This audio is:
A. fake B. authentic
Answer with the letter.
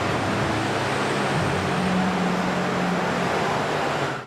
B